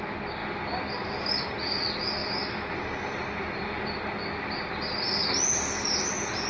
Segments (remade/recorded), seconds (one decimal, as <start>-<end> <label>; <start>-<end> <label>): 0.0-6.5 recorded